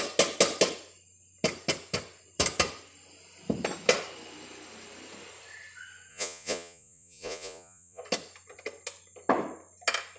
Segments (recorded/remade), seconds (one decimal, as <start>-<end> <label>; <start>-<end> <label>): 0.0-6.1 recorded; 6.1-8.0 remade; 8.0-10.2 recorded